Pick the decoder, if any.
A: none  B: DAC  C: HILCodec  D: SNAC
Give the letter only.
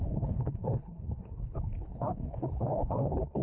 C